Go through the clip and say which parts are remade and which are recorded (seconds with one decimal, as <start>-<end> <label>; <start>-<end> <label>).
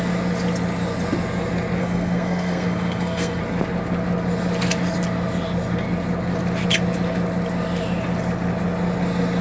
0.0-1.8 recorded; 1.8-3.4 remade; 3.4-9.4 recorded